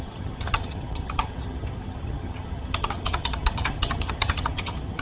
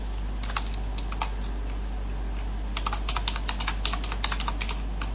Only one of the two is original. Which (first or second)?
second